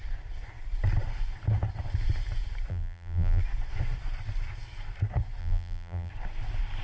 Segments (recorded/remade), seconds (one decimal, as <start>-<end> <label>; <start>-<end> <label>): 0.0-2.7 recorded; 2.7-3.4 remade; 3.4-5.4 recorded; 5.4-6.1 remade; 6.1-6.8 recorded